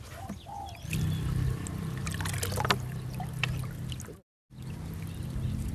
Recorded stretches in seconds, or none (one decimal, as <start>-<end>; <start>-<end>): 0.0-5.7